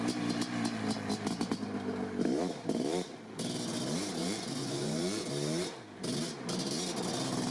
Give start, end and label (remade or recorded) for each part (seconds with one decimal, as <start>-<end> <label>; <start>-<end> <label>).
0.0-4.2 recorded; 4.2-5.3 remade; 5.3-7.5 recorded